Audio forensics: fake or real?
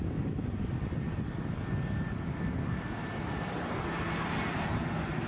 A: real